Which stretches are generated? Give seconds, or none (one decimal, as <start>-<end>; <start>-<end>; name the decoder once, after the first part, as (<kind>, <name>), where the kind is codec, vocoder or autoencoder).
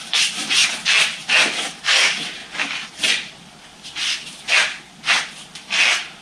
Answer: 0.0-0.6 (vocoder, BigVGAN v2); 1.8-2.4